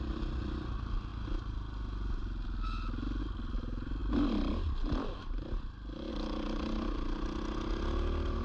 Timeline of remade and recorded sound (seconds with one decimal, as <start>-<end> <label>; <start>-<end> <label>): 0.0-8.4 recorded